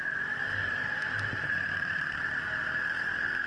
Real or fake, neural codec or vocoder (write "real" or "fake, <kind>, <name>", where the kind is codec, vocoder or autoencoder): fake, vocoder, BigVGAN v2